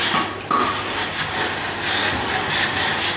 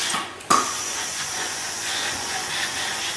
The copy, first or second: second